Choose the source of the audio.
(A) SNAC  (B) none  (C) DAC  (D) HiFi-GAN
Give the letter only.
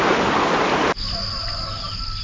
B